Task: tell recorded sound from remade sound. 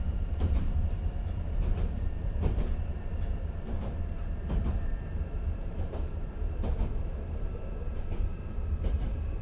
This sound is remade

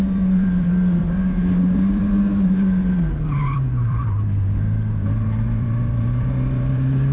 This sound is remade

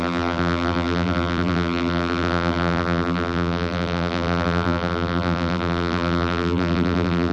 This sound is remade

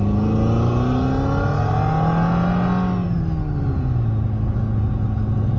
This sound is recorded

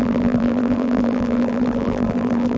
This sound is remade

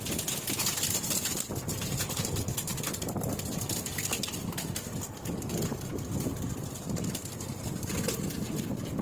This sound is remade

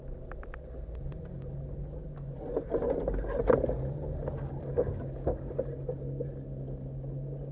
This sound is recorded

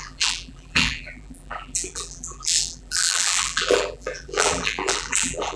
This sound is remade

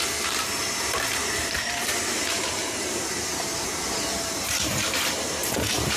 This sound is remade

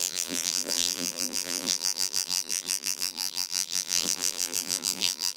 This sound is remade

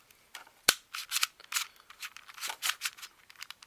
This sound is recorded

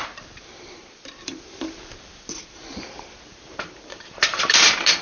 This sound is remade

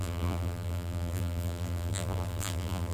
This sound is remade